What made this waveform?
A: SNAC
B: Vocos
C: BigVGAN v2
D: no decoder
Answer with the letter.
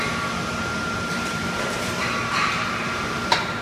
C